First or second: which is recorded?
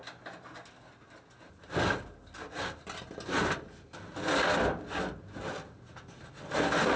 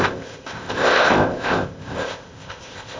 first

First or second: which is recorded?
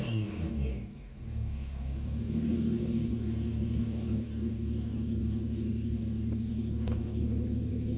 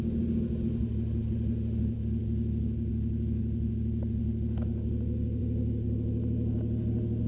second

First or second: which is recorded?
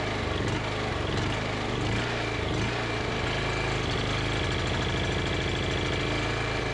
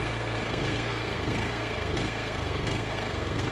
first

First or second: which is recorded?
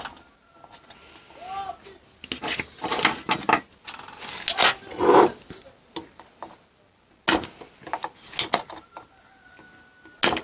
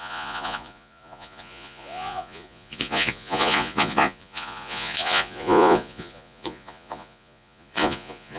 first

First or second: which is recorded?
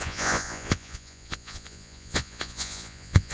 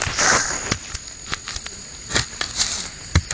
second